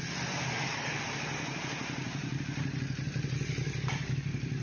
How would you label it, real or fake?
fake